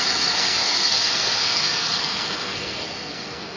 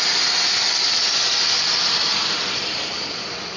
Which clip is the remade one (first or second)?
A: first